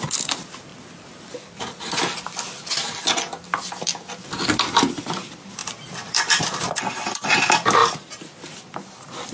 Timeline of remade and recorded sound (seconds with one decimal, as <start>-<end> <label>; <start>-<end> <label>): 0.0-0.7 remade; 0.7-5.1 recorded; 5.1-7.8 remade; 7.8-8.4 recorded; 8.4-9.3 remade